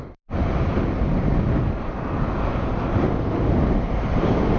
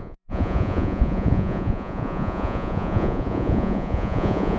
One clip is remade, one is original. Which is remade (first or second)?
second